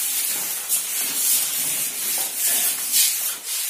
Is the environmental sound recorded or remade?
recorded